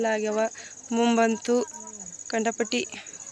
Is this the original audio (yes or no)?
yes